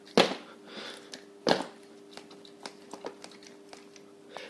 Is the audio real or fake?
real